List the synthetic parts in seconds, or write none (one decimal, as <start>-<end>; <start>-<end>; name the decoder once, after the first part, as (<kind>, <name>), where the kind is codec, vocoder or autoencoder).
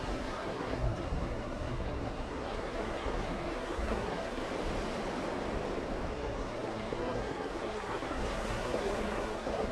0.0-4.4 (codec, SNAC); 6.1-9.7